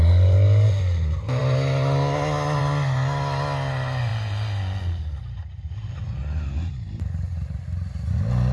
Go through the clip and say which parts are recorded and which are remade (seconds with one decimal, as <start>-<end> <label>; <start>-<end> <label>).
0.0-8.5 recorded